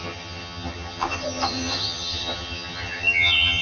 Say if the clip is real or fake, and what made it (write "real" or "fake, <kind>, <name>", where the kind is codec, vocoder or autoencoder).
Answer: fake, vocoder, HiFi-GAN